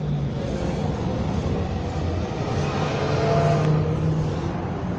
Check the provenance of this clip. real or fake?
real